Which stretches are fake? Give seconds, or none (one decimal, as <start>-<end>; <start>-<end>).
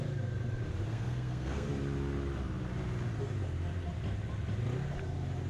0.9-1.7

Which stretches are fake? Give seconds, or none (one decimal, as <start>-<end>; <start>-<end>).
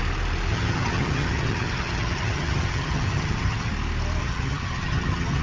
0.5-3.7; 4.2-5.4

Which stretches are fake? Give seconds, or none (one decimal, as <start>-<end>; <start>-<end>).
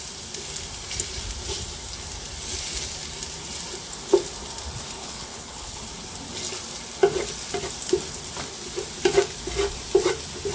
5.0-5.8